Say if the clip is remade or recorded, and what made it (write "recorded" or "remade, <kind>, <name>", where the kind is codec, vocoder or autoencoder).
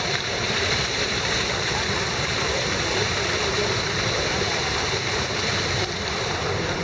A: remade, vocoder, BigVGAN v2